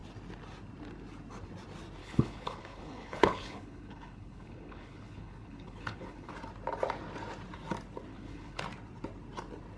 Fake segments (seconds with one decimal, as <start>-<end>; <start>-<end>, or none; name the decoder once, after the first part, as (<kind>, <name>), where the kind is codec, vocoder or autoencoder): 2.0-6.3 (codec, HILCodec); 8.1-8.6